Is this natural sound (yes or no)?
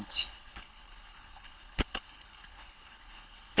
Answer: no